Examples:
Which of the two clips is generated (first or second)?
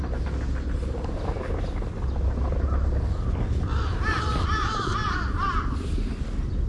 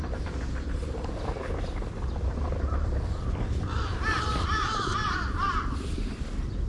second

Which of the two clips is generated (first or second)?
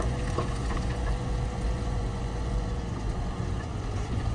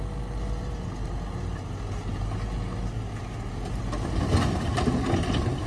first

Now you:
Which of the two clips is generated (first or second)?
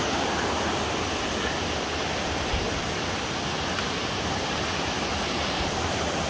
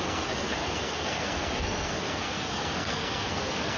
second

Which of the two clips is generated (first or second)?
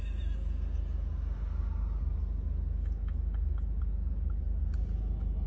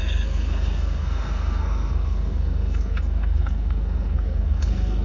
second